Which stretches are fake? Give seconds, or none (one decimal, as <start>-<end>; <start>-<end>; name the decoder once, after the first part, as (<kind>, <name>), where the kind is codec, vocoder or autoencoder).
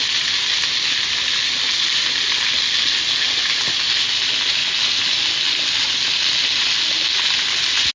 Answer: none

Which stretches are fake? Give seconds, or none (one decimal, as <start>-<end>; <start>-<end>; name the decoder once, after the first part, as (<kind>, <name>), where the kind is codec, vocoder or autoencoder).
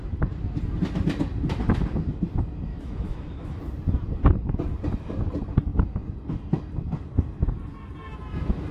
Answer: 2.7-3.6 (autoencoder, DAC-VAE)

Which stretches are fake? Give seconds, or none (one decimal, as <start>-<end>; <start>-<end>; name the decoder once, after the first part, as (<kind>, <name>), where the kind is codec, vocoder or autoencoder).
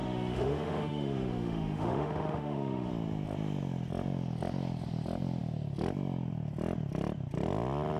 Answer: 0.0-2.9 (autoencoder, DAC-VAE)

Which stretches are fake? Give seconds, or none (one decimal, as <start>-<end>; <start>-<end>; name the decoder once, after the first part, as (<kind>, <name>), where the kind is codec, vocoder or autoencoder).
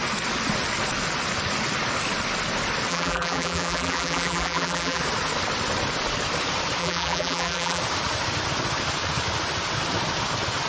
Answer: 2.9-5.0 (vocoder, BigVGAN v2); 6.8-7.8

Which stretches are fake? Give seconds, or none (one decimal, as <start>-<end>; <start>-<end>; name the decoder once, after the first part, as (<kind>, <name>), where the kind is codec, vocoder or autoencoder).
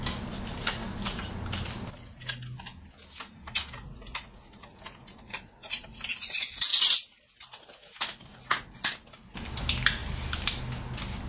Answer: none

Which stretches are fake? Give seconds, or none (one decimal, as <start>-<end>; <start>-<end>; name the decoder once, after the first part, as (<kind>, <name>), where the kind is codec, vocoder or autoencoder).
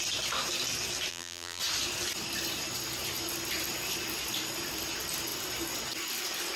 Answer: 1.1-1.6 (vocoder, BigVGAN v2)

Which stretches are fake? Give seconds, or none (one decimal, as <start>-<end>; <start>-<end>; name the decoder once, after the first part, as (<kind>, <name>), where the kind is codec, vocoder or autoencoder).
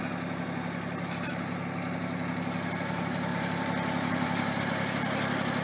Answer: 3.3-4.6 (vocoder, BigVGAN v2)